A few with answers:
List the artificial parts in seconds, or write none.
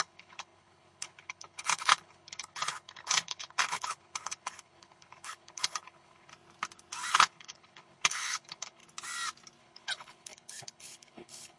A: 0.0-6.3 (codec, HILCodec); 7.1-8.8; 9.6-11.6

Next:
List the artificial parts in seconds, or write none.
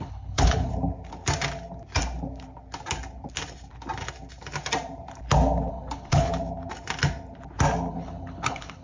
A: 0.0-0.7 (codec, HILCodec); 5.7-6.3; 7.9-8.8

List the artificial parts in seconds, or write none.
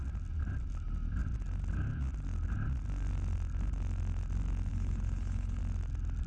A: 4.7-5.6 (codec, HILCodec)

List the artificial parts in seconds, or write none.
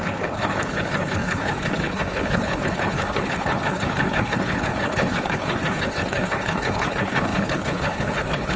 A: 0.0-8.6 (codec, HILCodec)